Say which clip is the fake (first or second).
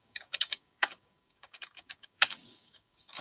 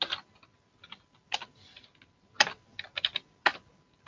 first